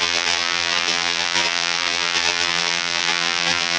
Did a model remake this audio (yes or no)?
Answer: yes